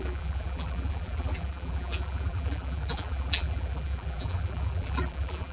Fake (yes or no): yes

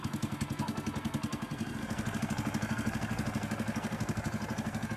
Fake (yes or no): yes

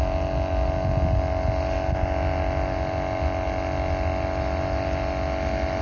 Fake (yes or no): no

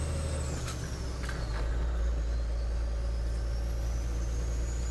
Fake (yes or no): no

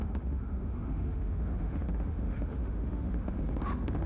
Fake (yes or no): yes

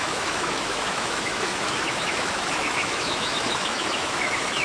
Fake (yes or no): yes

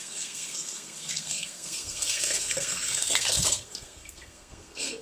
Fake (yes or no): yes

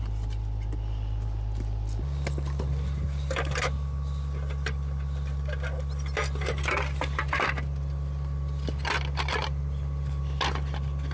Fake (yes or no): no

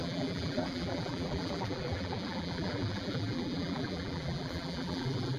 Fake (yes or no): yes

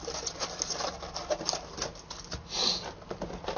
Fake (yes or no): no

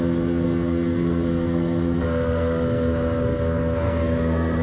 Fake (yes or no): yes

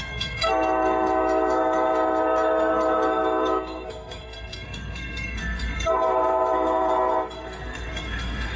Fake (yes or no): yes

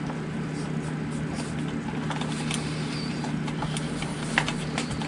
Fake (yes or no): no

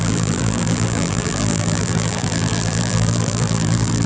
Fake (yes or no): yes